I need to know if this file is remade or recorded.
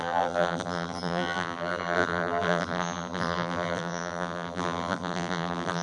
remade